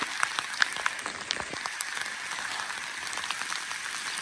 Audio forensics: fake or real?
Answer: real